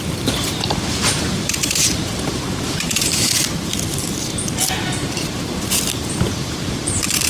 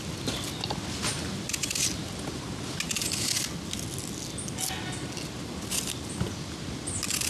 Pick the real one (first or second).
second